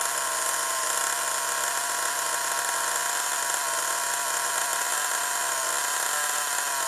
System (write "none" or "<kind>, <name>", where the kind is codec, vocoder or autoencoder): none